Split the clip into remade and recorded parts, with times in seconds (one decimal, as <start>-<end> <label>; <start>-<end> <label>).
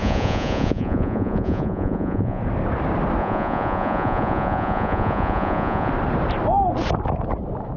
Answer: 0.0-2.4 remade; 2.4-3.2 recorded; 3.2-5.9 remade; 5.9-7.8 recorded